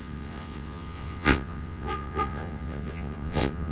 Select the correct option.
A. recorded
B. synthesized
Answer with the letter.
B